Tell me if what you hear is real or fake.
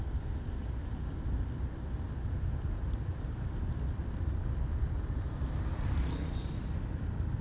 real